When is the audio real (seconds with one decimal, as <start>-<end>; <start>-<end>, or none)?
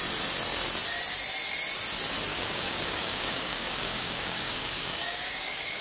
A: 0.0-2.3